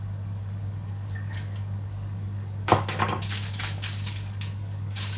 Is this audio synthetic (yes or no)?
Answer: yes